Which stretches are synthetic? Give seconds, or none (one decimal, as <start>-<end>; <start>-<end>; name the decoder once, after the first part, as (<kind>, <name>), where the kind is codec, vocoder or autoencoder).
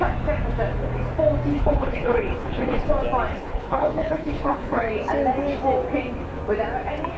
1.5-2.9 (codec, HILCodec); 3.3-4.9